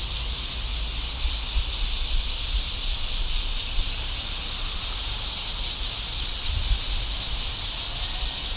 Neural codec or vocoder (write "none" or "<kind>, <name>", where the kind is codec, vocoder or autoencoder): none